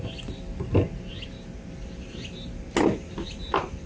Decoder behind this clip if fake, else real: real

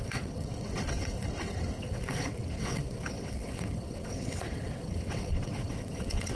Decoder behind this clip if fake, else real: fake, vocoder, WaveNeXt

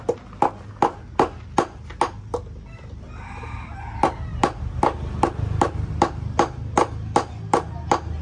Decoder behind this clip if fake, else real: real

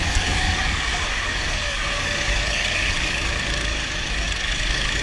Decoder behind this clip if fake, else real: fake, codec, DAC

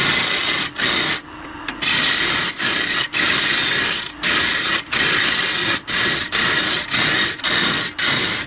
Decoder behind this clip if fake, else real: real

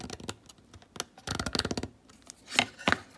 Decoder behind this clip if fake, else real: real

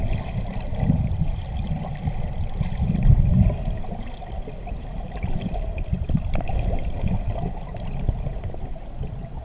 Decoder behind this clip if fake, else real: real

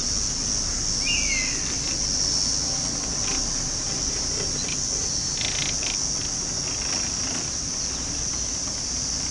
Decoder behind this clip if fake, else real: real